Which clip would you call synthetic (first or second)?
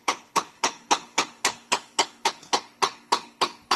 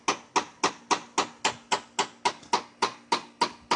first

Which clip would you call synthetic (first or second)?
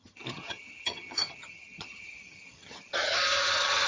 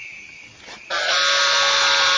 first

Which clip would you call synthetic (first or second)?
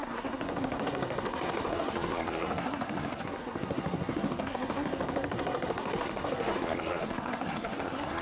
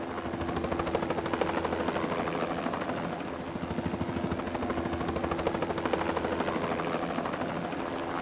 first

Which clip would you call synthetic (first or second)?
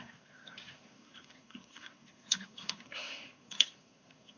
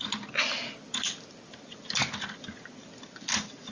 first